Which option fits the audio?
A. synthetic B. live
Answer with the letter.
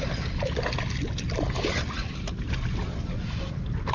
B